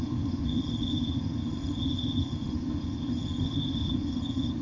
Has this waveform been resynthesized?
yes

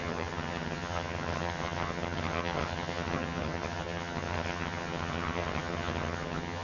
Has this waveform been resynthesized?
yes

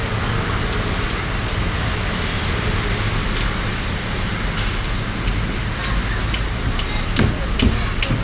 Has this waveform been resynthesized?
no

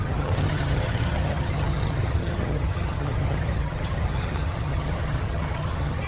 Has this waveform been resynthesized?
yes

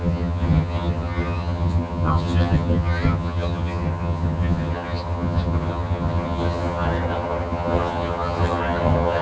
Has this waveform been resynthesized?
yes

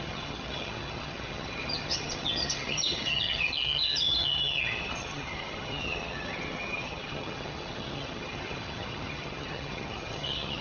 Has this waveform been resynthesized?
yes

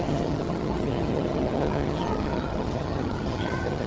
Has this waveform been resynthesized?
yes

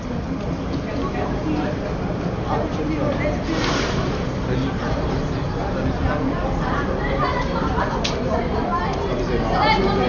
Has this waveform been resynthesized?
no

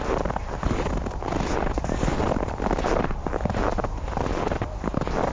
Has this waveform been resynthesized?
no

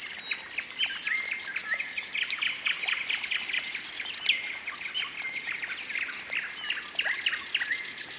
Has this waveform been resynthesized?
no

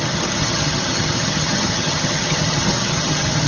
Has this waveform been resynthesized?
yes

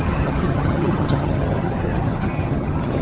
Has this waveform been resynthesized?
yes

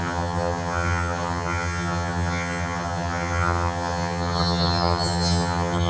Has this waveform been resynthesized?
yes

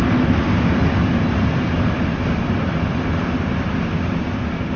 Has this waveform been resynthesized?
no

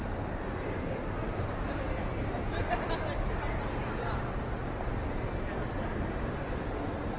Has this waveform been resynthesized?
no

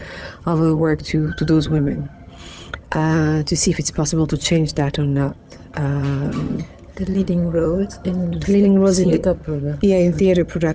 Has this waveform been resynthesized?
yes